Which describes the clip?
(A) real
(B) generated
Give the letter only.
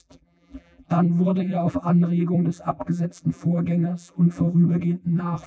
B